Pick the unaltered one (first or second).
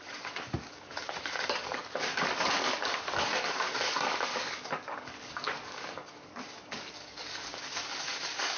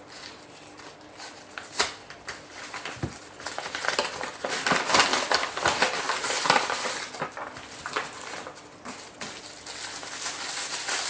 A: second